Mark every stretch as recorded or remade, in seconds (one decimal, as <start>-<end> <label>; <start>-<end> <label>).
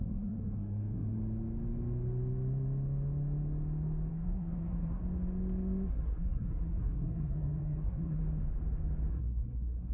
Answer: 0.0-1.2 remade; 1.2-4.1 recorded; 4.1-5.0 remade; 5.0-5.9 recorded; 5.9-8.2 remade; 8.2-9.1 recorded; 9.1-9.9 remade